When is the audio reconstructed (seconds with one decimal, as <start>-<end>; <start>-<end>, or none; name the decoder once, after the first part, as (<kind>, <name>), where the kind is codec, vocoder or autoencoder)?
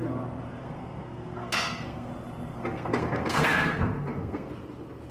0.6-2.1 (codec, SNAC); 2.5-4.5